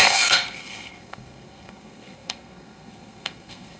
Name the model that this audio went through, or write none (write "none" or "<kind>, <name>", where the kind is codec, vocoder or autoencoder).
codec, SNAC